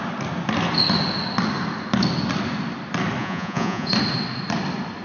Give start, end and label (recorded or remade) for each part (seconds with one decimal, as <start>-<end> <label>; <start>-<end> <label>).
0.0-3.2 recorded; 3.2-3.9 remade; 3.9-5.0 recorded